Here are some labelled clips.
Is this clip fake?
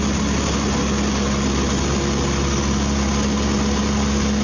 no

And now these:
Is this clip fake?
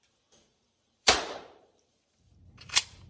yes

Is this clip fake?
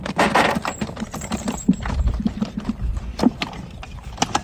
yes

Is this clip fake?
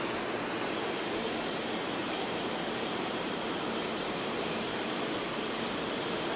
yes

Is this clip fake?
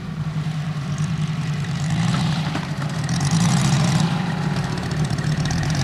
yes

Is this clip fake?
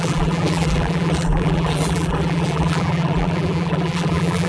yes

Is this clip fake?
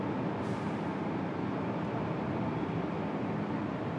no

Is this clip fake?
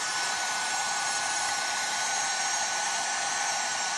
yes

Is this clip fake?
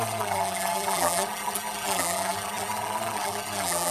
yes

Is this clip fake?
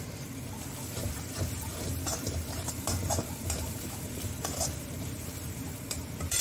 yes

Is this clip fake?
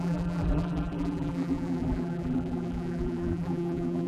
yes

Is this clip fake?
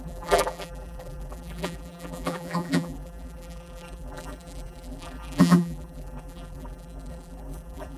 yes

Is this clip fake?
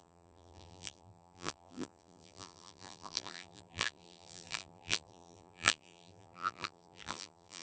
yes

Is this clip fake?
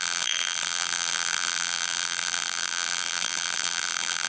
yes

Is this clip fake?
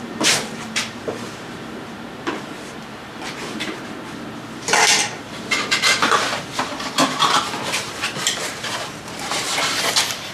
yes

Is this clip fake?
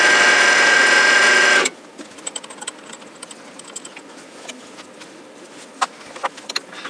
no